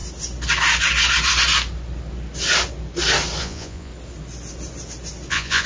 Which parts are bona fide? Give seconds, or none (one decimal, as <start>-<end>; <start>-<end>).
0.0-3.4; 3.9-5.3